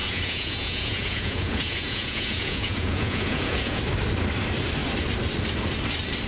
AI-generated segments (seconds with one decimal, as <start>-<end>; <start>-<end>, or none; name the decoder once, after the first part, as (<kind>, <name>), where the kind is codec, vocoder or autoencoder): 0.0-3.8 (vocoder, Vocos)